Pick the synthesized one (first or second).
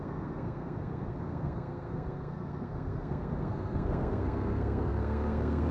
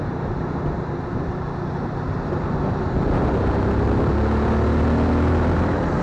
first